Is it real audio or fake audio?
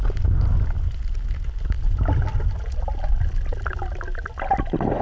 real